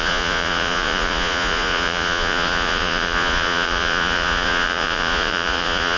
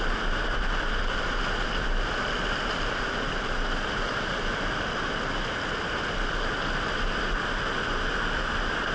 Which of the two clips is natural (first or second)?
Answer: second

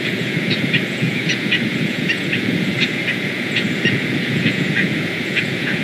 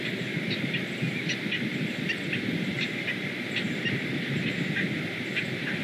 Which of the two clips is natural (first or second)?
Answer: second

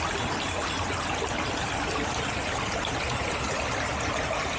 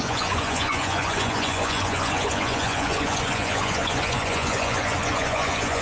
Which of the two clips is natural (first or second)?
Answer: first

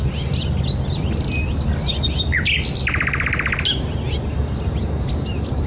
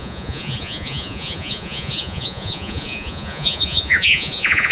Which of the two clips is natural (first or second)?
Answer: first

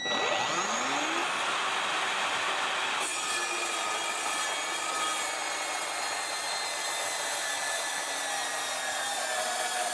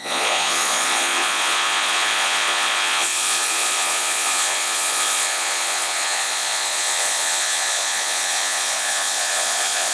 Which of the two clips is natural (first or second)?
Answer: first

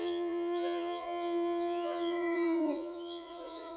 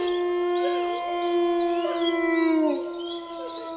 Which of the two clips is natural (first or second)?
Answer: second